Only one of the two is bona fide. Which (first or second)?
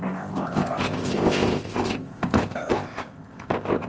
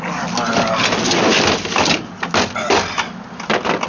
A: second